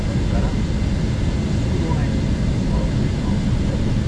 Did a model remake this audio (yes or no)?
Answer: no